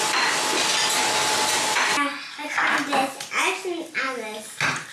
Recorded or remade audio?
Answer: recorded